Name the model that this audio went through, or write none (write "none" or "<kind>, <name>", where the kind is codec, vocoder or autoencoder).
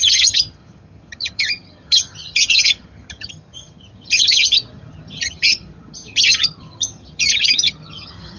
vocoder, HiFi-GAN